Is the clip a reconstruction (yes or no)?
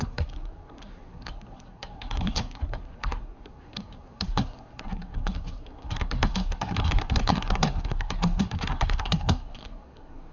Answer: yes